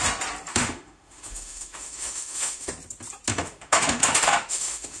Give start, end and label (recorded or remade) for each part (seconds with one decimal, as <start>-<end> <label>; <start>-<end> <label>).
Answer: 0.0-0.5 recorded; 0.5-2.7 remade; 2.7-3.3 recorded; 3.3-5.0 remade